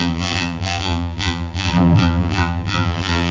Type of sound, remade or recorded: remade